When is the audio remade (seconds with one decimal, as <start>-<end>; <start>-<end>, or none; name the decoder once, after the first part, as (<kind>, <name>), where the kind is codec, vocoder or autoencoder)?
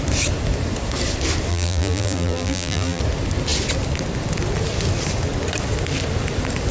1.5-3.0 (vocoder, BigVGAN v2)